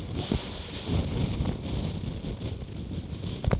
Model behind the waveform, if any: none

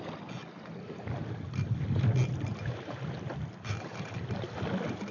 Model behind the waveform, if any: none